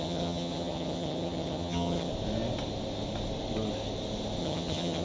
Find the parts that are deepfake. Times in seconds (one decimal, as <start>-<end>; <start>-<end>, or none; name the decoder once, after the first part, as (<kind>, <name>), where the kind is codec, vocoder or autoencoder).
0.0-2.1 (vocoder, HiFi-GAN); 4.4-5.0